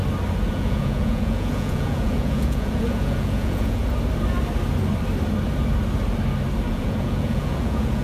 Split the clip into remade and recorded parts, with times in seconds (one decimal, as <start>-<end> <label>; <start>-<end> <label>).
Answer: 0.0-0.5 recorded; 0.5-3.8 remade; 3.8-6.7 recorded; 6.7-8.0 remade